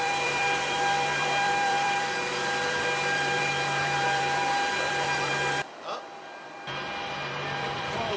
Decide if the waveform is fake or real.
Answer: fake